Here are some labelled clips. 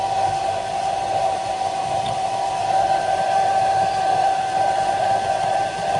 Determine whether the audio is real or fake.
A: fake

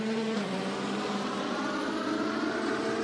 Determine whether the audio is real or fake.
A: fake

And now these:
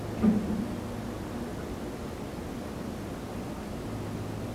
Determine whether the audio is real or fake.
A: real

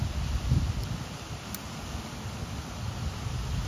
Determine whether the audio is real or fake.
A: real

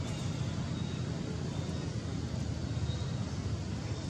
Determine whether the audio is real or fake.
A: real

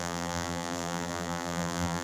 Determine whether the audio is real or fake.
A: fake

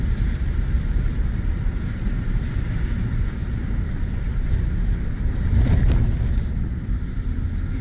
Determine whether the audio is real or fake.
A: fake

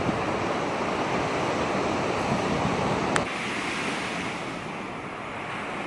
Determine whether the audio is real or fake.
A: real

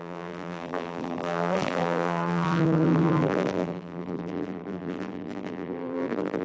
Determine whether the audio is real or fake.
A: fake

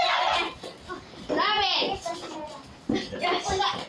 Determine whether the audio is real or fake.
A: real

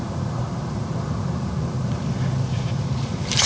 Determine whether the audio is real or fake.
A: fake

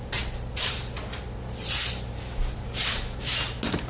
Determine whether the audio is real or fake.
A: real